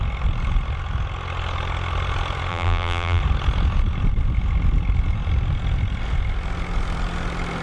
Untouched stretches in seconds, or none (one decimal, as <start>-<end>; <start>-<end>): 0.0-2.5; 3.2-7.6